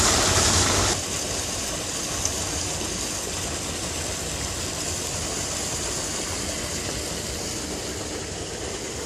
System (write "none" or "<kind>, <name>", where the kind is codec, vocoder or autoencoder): none